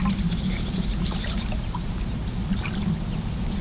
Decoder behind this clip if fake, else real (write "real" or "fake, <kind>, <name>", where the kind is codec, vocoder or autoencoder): real